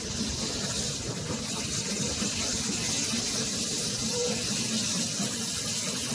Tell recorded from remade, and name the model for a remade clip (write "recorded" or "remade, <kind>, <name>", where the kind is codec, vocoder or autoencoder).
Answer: recorded